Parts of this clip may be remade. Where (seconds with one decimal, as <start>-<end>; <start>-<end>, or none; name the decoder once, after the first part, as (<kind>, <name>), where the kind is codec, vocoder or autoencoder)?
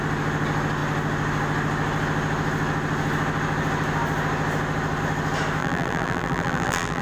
5.6-7.0 (vocoder, BigVGAN v2)